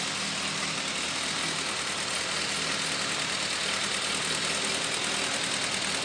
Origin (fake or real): real